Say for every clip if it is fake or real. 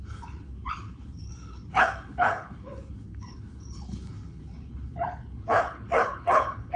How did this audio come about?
fake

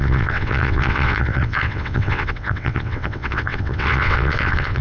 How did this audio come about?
fake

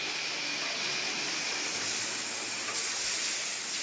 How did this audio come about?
real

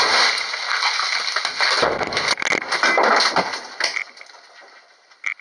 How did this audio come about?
real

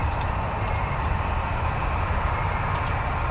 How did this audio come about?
real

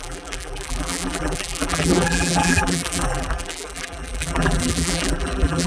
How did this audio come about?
fake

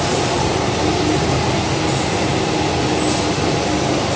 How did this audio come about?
real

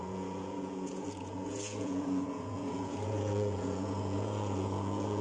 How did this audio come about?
fake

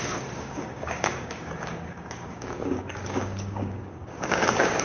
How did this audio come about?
fake